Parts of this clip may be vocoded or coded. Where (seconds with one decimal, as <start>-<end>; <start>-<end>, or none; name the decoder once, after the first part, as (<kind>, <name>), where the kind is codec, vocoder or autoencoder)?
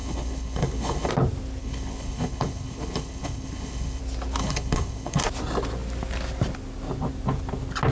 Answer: 0.0-1.1 (codec, HILCodec); 1.6-4.0; 4.4-5.2